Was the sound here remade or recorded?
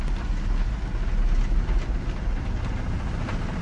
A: recorded